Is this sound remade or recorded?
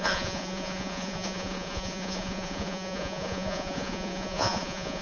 remade